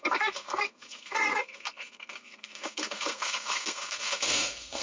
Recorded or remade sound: remade